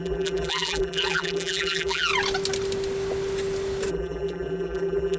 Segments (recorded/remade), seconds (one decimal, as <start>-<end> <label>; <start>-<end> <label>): 0.0-2.1 remade; 2.1-3.9 recorded; 3.9-5.2 remade